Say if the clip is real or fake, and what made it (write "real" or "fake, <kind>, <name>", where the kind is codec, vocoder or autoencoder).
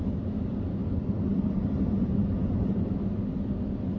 real